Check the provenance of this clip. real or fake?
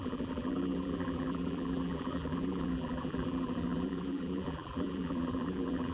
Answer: fake